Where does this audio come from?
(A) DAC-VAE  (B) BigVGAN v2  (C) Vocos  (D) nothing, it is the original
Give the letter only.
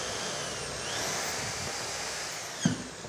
D